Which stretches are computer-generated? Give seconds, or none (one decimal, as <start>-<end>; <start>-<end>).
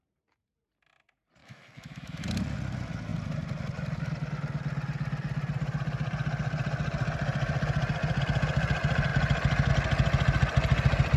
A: 1.4-2.2